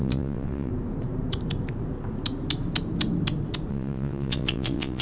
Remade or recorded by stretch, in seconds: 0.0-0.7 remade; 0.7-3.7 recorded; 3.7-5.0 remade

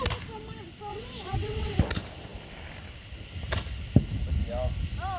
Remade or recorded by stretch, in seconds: 0.0-0.9 recorded; 0.9-1.8 remade; 1.8-5.2 recorded

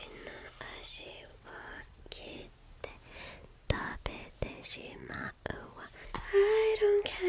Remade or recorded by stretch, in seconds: 0.0-1.3 recorded; 1.3-2.0 remade; 2.0-4.7 recorded; 4.7-5.9 remade; 5.9-7.3 recorded